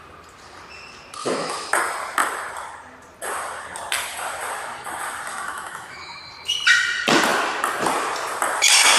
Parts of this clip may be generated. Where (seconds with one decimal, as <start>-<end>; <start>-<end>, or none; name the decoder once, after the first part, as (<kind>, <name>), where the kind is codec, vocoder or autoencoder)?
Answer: 1.2-1.8 (autoencoder, DAC-VAE); 5.3-6.2